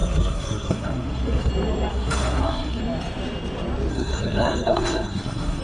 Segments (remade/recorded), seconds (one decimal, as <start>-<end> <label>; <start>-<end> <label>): 0.0-1.5 remade; 1.5-1.9 recorded; 1.9-2.8 remade; 2.8-3.9 recorded; 3.9-5.6 remade